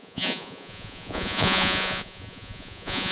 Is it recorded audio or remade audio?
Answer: remade